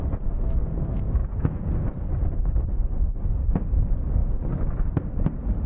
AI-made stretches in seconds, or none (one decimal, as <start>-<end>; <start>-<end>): 1.2-1.7